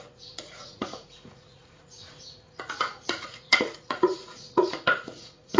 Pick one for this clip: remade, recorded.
remade